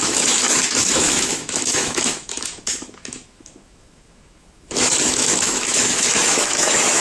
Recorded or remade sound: remade